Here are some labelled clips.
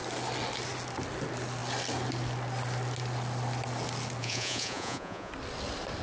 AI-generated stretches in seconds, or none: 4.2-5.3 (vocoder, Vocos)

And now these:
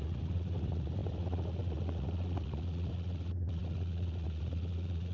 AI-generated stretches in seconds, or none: 0.0-5.1 (vocoder, Vocos)

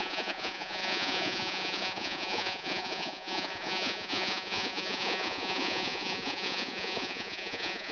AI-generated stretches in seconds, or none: 0.0-7.9 (vocoder, Vocos)

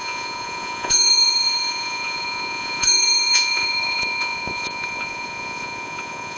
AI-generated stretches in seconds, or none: 0.0-6.4 (vocoder, Vocos)